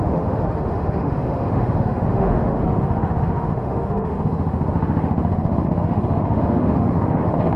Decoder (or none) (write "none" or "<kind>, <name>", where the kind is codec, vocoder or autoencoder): autoencoder, DAC-VAE